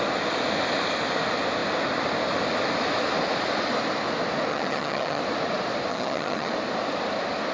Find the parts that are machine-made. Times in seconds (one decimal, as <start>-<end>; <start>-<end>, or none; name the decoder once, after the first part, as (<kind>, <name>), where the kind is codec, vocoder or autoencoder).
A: 4.5-5.2 (vocoder, HiFi-GAN); 5.9-6.5